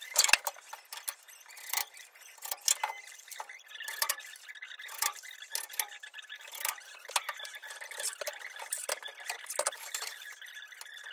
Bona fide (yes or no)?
yes